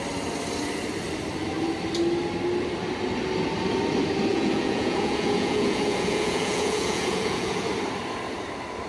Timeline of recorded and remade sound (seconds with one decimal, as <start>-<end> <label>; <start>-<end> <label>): 0.0-4.3 recorded; 4.3-7.7 remade; 7.7-8.9 recorded